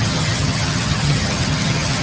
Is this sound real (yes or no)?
no